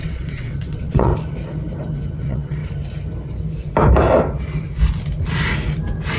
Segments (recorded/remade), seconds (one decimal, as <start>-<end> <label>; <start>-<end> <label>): 0.0-1.1 remade; 1.1-2.2 recorded; 2.2-2.6 remade; 2.6-6.2 recorded